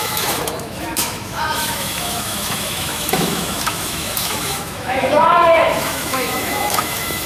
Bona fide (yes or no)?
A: no